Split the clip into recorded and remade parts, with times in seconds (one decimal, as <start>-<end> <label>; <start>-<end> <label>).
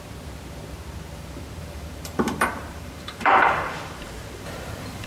0.0-1.6 recorded; 1.6-5.1 remade